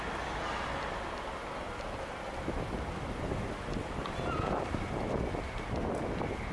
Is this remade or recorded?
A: recorded